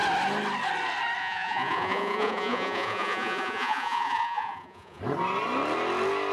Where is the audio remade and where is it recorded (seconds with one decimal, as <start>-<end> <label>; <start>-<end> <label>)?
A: 0.0-1.2 recorded; 1.2-5.0 remade; 5.0-6.3 recorded